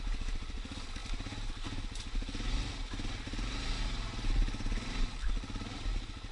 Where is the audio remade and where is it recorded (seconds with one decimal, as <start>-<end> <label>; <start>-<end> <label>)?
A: 0.0-6.3 recorded